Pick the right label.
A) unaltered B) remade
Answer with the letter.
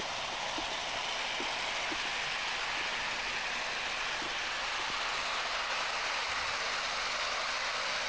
A